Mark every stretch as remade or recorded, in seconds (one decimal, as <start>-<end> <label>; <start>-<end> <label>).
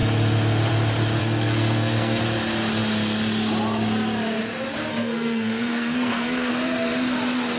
0.0-1.2 recorded; 1.2-2.2 remade; 2.2-4.9 recorded; 4.9-6.5 remade; 6.5-7.6 recorded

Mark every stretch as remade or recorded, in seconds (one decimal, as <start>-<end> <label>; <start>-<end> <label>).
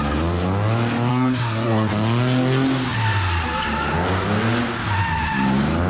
0.0-1.1 recorded; 1.1-1.9 remade; 1.9-5.9 recorded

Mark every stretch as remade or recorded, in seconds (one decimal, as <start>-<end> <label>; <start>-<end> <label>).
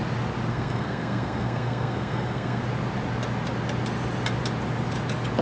0.0-0.5 recorded; 0.5-2.6 remade; 2.6-5.4 recorded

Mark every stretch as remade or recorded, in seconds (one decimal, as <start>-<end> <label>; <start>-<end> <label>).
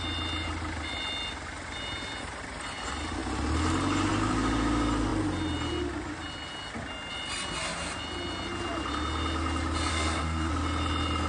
0.0-9.9 recorded; 9.9-10.5 remade; 10.5-11.3 recorded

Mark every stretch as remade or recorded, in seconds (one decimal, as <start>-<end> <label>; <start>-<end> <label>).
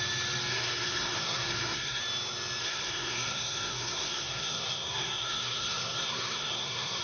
0.0-0.5 recorded; 0.5-2.0 remade; 2.0-2.6 recorded; 2.6-7.0 remade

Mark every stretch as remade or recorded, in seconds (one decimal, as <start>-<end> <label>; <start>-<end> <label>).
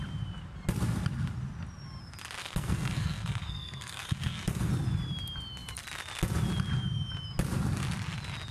0.0-2.4 recorded; 2.4-4.7 remade; 4.7-8.5 recorded